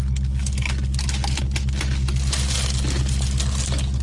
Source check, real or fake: real